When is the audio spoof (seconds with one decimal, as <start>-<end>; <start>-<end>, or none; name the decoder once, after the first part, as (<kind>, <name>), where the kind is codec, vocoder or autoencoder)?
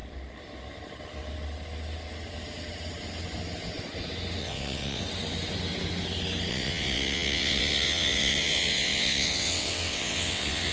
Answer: 4.4-5.0 (vocoder, WaveNeXt); 6.5-10.7